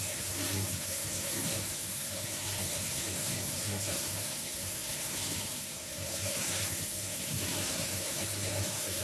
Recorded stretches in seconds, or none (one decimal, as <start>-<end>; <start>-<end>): none